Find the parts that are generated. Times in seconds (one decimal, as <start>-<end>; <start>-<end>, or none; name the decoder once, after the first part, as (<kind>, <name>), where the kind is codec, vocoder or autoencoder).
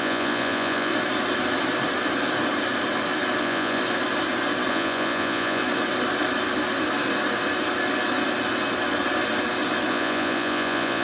0.0-0.9 (vocoder, Vocos); 3.4-3.8; 4.7-5.6; 9.9-11.0